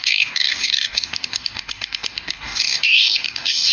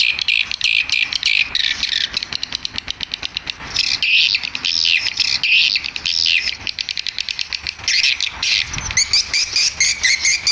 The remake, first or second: first